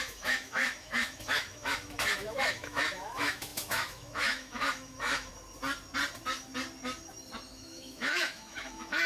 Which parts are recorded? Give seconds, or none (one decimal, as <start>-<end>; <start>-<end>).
5.3-7.5